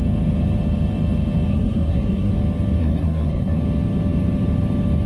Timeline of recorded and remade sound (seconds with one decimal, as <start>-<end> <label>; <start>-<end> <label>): 0.0-1.5 recorded; 1.5-2.3 remade; 2.3-2.8 recorded; 2.8-3.6 remade; 3.6-5.1 recorded